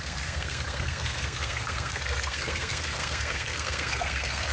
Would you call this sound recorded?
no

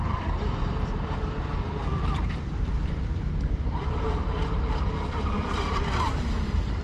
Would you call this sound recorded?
no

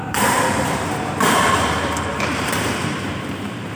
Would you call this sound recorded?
no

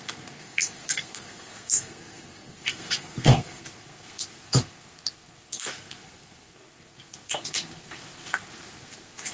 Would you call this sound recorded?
no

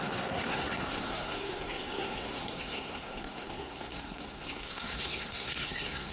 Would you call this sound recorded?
no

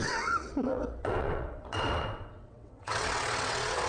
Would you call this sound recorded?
no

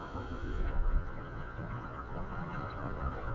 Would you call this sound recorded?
no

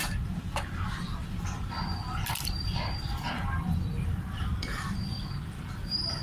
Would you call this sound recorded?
yes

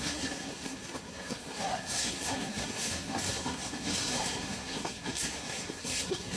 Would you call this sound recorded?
no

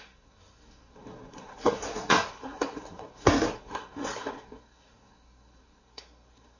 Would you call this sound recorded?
no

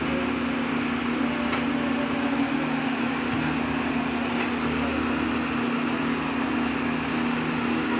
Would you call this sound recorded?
yes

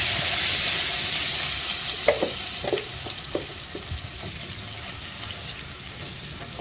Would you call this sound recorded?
yes